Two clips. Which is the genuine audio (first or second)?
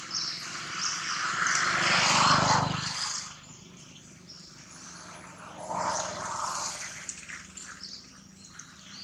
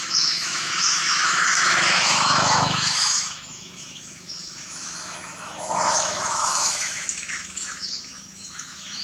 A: first